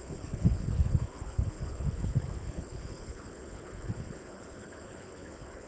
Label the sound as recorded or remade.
remade